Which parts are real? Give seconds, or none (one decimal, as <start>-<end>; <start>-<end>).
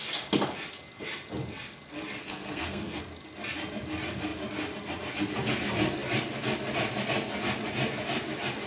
0.0-2.2; 3.0-8.7